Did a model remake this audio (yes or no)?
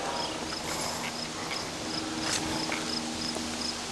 no